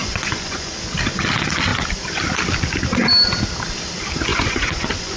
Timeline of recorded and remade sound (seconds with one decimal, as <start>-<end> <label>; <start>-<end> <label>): 0.0-0.7 remade; 0.7-4.3 recorded; 4.3-5.2 remade